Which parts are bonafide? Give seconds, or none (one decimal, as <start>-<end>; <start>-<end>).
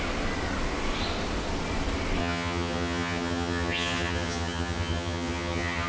0.0-2.2